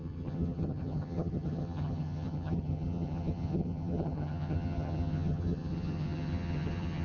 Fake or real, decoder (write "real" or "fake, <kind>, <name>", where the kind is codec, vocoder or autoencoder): fake, vocoder, HiFi-GAN